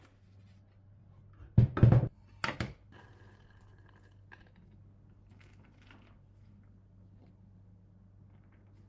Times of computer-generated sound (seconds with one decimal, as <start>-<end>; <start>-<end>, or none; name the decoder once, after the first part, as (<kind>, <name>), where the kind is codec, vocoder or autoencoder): none